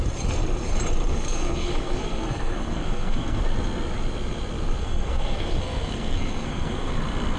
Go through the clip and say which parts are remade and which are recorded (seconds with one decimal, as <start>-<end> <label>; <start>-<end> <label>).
0.0-1.1 recorded; 1.1-3.4 remade; 3.4-4.8 recorded; 4.8-6.9 remade; 6.9-7.4 recorded